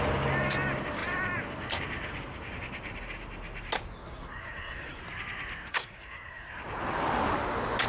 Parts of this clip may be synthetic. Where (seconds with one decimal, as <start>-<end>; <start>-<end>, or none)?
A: 4.0-5.0; 5.7-6.5